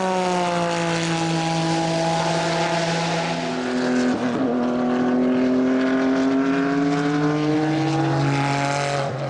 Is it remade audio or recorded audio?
recorded